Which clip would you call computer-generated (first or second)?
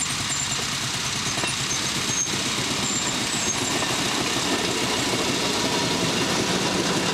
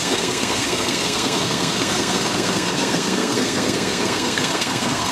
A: second